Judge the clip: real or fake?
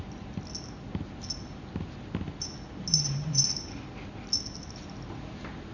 real